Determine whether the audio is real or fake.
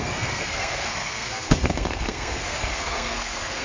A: fake